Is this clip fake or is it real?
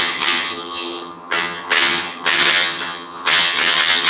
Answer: fake